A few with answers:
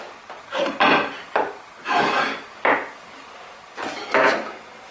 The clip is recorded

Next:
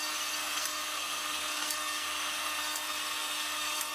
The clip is remade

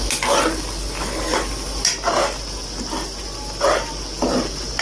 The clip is recorded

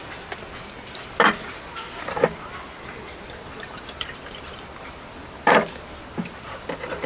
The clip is remade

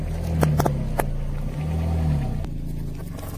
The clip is recorded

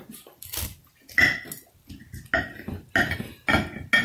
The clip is recorded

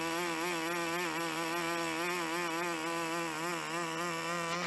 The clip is recorded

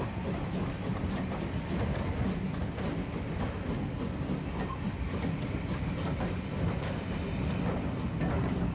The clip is recorded